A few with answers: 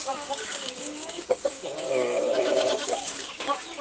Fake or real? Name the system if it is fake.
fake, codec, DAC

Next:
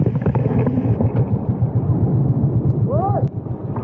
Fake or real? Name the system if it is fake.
real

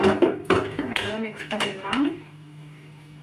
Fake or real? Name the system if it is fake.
fake, codec, DAC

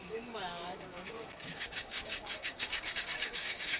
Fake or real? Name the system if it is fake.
fake, codec, DAC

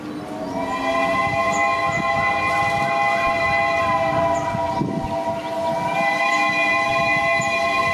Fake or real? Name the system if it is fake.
real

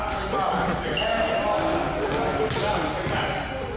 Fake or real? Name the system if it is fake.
real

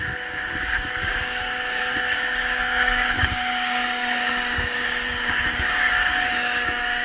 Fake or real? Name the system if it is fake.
fake, codec, DAC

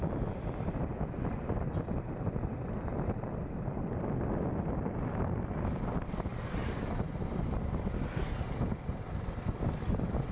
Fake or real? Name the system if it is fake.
real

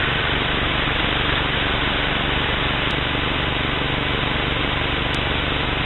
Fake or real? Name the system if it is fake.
real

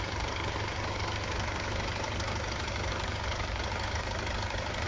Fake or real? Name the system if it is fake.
fake, codec, DAC